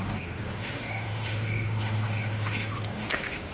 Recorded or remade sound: remade